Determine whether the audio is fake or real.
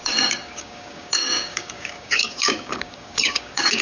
fake